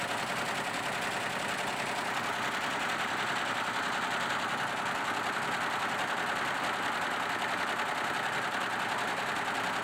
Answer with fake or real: real